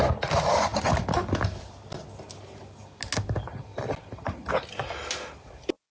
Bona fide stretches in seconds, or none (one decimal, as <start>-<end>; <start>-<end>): 0.0-6.0